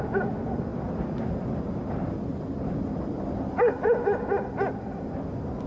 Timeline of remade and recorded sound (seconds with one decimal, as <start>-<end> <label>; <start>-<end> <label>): 0.0-5.7 recorded